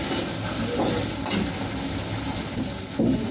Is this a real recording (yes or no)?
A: yes